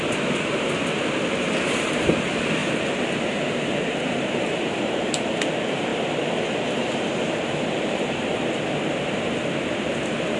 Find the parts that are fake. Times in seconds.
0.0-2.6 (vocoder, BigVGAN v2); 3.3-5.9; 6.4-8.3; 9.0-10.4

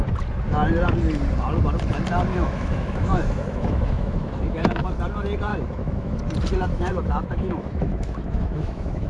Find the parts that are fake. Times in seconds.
2.3-4.8 (autoencoder, DAC-VAE); 5.5-6.2; 6.7-9.1

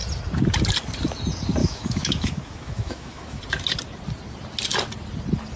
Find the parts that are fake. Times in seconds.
1.6-3.4 (autoencoder, DAC-VAE)

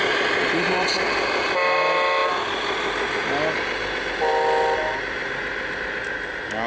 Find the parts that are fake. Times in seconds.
none